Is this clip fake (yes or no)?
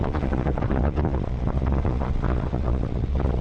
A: yes